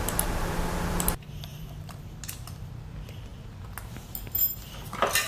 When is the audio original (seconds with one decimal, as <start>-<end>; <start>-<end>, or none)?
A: 0.0-1.5; 2.0-5.3